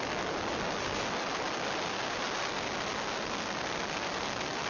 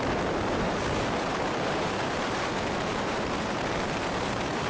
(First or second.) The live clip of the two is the first